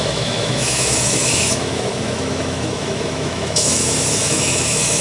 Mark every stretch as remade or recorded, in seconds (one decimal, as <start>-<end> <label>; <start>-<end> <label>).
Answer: 0.0-5.0 remade